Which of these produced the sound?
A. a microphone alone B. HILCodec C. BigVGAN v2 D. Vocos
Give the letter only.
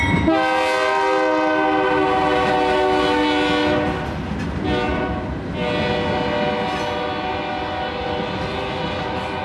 A